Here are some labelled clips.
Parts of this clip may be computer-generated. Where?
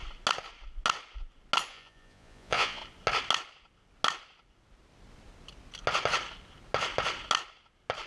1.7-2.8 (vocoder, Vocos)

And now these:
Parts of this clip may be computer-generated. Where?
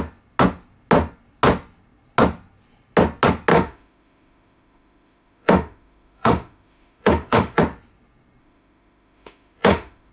3.5-7.6 (autoencoder, DAC-VAE); 8.4-10.1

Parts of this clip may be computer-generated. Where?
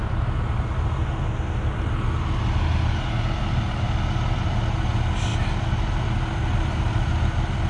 none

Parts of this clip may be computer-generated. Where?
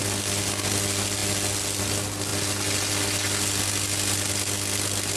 none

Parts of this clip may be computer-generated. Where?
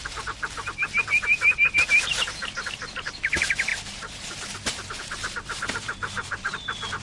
0.0-7.0 (vocoder, BigVGAN v2)